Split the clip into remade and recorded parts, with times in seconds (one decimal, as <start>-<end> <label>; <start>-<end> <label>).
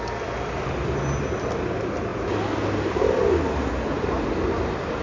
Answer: 0.0-5.0 recorded